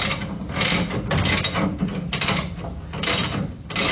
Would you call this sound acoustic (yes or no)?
yes